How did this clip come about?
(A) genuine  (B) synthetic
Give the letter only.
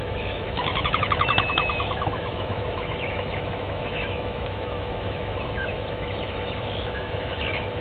B